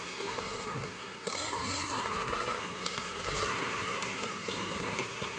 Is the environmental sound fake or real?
fake